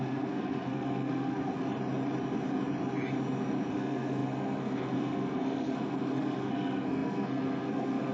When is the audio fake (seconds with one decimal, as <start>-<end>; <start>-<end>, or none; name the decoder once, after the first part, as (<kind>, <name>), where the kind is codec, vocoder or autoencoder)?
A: 0.0-1.5 (codec, SNAC); 3.7-8.1